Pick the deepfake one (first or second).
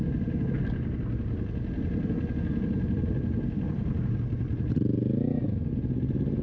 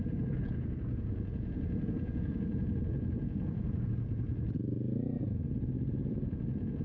second